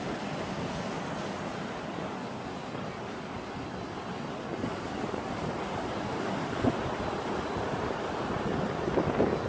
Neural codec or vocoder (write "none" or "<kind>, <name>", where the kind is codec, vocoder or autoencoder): none